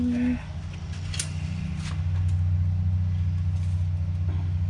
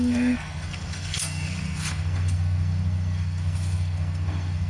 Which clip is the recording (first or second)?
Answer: first